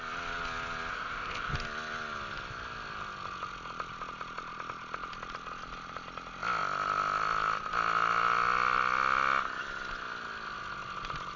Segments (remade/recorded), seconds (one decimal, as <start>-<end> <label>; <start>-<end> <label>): 0.0-0.9 recorded; 0.9-1.5 remade; 1.5-11.4 recorded